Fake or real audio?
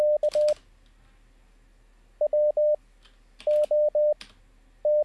real